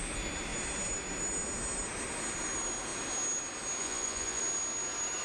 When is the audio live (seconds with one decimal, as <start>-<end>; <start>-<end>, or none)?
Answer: 0.0-3.8; 4.4-5.2